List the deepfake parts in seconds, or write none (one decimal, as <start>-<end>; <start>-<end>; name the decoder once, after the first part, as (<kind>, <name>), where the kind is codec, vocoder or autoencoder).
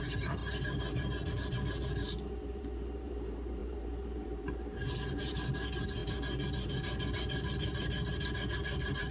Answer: 0.0-9.1 (vocoder, BigVGAN v2)